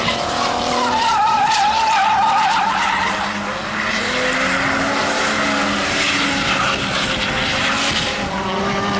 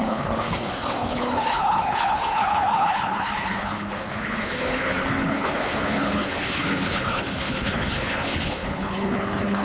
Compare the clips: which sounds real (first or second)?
first